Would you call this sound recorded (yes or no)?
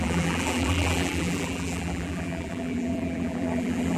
no